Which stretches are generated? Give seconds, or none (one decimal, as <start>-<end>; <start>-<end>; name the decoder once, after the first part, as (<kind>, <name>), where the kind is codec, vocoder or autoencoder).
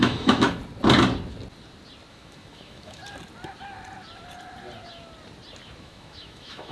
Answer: 0.0-0.6 (autoencoder, DAC-VAE); 2.1-3.0; 5.8-6.7